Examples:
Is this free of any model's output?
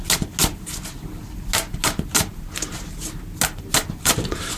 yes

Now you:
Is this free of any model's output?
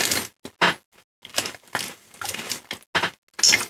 yes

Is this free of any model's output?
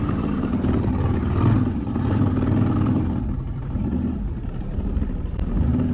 no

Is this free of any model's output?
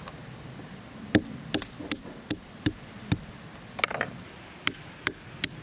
yes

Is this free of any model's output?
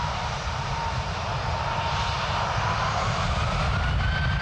no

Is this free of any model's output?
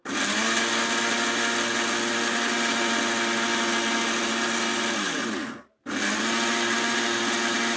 yes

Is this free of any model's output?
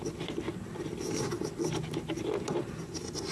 yes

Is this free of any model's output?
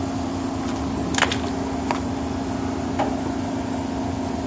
yes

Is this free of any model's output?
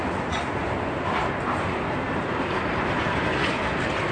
no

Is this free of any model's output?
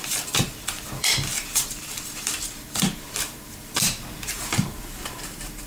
no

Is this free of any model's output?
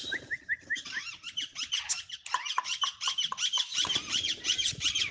yes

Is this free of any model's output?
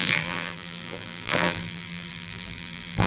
no